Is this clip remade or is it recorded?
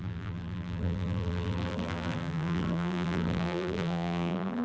remade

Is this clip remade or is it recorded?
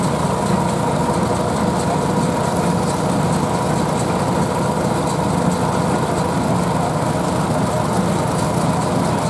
recorded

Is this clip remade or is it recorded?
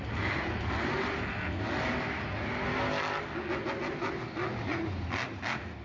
recorded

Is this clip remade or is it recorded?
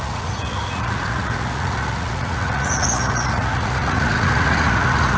remade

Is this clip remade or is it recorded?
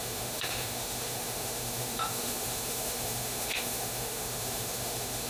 remade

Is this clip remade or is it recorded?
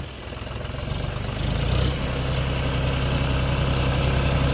recorded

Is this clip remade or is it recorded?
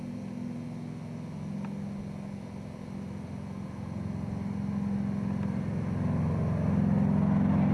recorded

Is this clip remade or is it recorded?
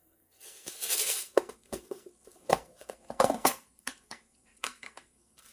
remade